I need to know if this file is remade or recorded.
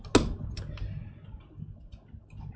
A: recorded